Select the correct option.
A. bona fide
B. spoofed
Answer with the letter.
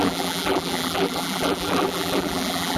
B